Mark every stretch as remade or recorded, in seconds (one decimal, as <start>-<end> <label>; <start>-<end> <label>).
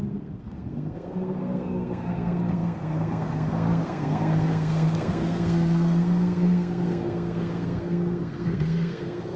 0.0-9.4 remade